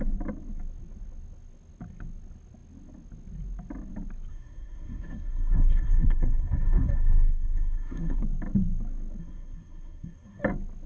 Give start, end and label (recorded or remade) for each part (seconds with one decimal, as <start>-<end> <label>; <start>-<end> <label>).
0.0-4.3 recorded; 4.3-8.2 remade; 8.2-9.2 recorded; 9.2-10.4 remade; 10.4-10.9 recorded